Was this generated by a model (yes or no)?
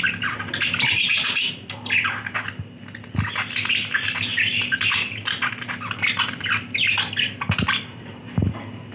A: no